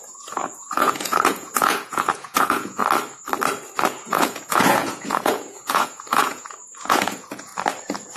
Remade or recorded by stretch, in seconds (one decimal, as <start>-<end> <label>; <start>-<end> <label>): 0.0-2.8 remade; 2.8-4.0 recorded; 4.0-7.5 remade; 7.5-8.2 recorded